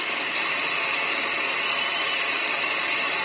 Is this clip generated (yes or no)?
no